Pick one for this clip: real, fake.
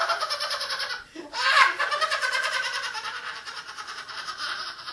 fake